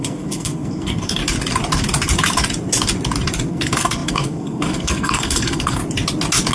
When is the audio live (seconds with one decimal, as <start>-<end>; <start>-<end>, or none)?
1.2-3.5; 5.8-6.5